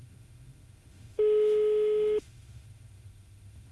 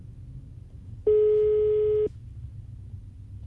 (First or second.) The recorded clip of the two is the second